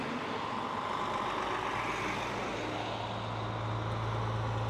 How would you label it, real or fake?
real